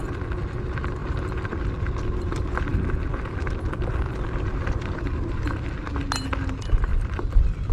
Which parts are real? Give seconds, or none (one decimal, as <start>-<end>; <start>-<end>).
0.0-7.7